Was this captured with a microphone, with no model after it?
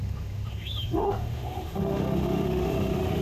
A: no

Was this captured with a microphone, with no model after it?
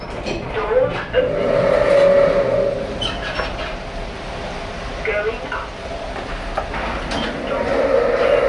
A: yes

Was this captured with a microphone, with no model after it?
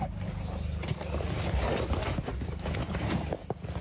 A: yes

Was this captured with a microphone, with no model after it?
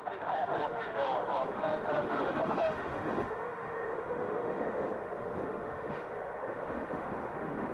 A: no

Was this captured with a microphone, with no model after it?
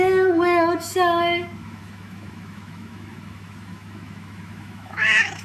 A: no